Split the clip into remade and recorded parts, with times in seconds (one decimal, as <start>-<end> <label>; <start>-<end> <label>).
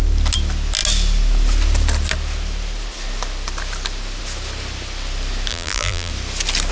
0.0-5.5 recorded; 5.5-6.1 remade; 6.1-6.7 recorded